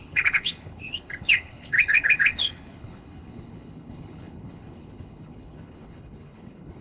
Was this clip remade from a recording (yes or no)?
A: yes